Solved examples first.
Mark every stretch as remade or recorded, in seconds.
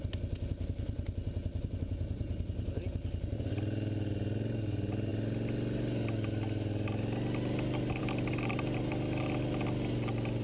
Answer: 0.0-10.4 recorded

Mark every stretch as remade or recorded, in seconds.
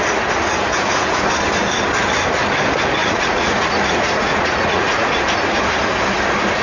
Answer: 0.0-0.7 recorded; 0.7-1.3 remade; 1.3-3.0 recorded; 3.0-5.2 remade; 5.2-6.6 recorded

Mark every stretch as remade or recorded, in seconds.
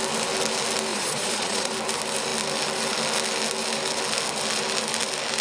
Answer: 0.0-0.9 recorded; 0.9-1.7 remade; 1.7-5.4 recorded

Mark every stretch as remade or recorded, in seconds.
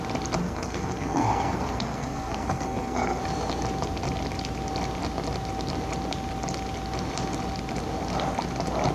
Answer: 0.0-0.4 recorded; 0.4-3.2 remade; 3.2-8.9 recorded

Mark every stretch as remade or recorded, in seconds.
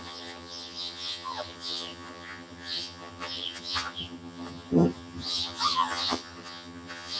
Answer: 0.0-7.2 remade